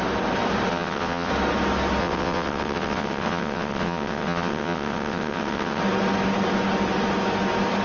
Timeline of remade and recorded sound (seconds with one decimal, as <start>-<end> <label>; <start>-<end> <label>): 0.0-0.7 recorded; 0.7-1.3 remade; 1.3-2.0 recorded; 2.0-5.8 remade; 5.8-7.8 recorded